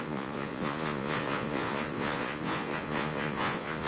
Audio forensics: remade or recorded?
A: remade